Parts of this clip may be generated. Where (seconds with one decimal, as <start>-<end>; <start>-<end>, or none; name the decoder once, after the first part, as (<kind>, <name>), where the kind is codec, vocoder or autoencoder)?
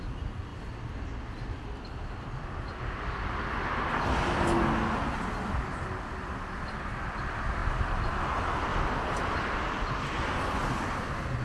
none